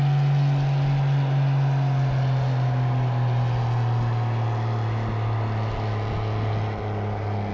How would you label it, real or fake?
real